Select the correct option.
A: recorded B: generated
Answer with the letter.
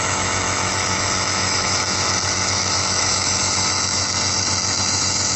B